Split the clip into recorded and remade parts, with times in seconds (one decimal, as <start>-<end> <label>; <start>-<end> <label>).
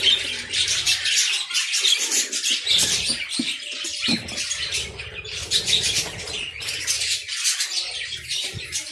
0.0-8.9 recorded